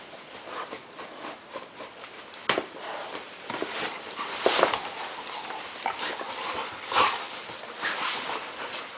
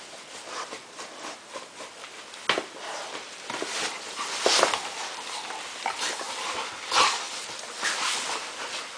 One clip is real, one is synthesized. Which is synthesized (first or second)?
first